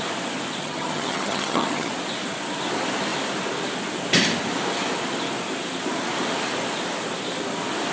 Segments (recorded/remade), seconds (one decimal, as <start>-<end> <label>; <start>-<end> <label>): 0.0-0.6 recorded; 0.6-1.9 remade; 1.9-7.9 recorded